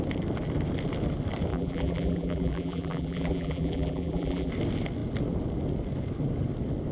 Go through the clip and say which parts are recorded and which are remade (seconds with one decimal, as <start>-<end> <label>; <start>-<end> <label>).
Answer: 0.0-1.5 recorded; 1.5-4.5 remade; 4.5-6.9 recorded